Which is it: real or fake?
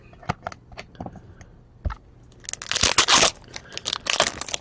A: real